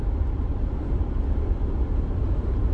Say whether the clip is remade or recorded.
recorded